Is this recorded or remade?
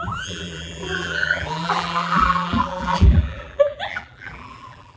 remade